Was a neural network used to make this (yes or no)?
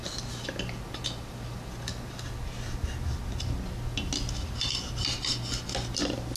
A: no